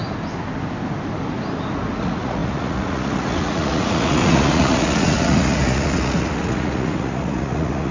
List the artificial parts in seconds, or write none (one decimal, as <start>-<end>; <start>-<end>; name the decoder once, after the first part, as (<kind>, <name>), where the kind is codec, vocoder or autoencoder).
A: 2.0-7.9 (vocoder, Vocos)

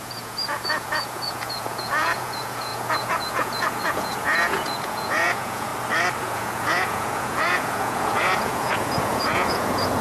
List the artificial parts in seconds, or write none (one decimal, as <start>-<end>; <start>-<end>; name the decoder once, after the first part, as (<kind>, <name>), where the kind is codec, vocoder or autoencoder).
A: 0.0-5.7 (vocoder, Vocos); 6.2-10.0

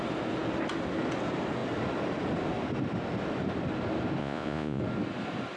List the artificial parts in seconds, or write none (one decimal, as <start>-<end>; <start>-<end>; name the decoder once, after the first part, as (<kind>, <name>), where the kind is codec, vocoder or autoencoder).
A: 4.2-4.8 (vocoder, Vocos)

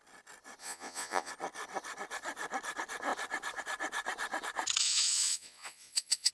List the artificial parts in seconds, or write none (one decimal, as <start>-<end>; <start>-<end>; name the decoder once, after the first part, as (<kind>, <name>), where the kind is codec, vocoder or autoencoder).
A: 0.6-1.3 (vocoder, Vocos); 4.8-6.3